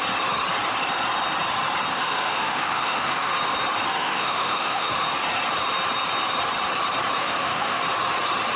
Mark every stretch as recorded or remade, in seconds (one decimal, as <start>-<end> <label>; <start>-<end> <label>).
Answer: 0.0-1.9 recorded; 1.9-3.3 remade; 3.3-3.9 recorded; 3.9-4.9 remade; 4.9-7.2 recorded; 7.2-7.8 remade; 7.8-8.6 recorded